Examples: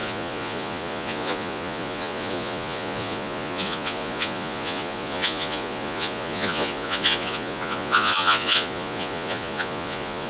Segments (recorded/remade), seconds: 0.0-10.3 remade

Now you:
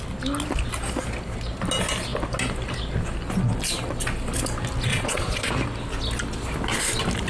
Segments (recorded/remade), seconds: 0.0-4.9 recorded; 4.9-5.5 remade; 5.5-7.3 recorded

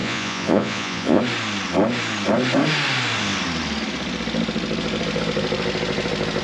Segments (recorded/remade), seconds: 0.0-1.2 remade; 1.2-6.4 recorded

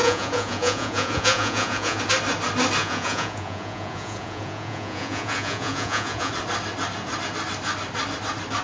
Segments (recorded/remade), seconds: 0.0-2.0 remade; 2.0-2.8 recorded; 2.8-6.3 remade; 6.3-8.6 recorded

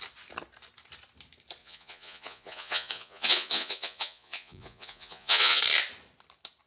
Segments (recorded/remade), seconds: 0.0-1.6 recorded; 1.6-5.6 remade; 5.6-6.7 recorded